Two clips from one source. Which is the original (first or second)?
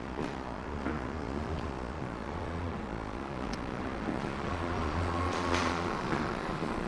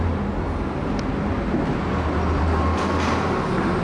second